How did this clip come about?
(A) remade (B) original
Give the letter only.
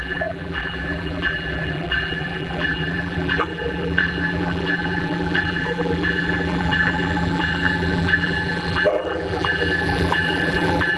A